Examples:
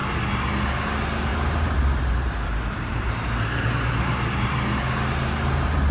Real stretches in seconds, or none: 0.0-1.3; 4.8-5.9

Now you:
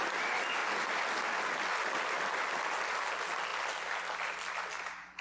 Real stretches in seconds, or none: 0.0-5.2

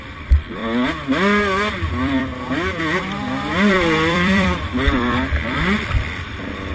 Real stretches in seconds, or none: 0.6-1.9; 2.3-3.7

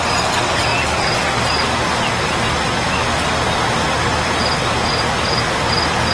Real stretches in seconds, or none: 0.0-6.1

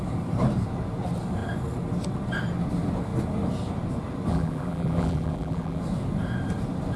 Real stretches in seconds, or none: 0.0-4.3; 5.8-7.0

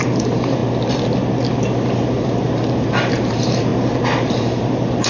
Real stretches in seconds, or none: 0.6-2.2; 3.7-4.3